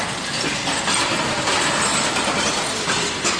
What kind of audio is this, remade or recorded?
recorded